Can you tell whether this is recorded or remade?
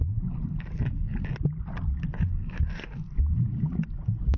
recorded